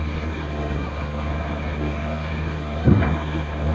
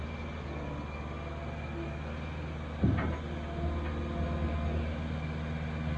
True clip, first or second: second